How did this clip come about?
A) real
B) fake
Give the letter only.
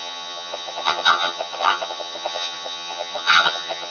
B